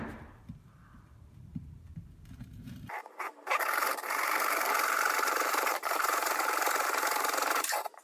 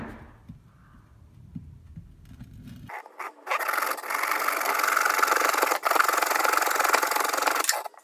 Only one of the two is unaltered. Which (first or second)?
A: second